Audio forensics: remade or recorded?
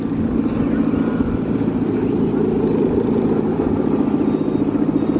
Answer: recorded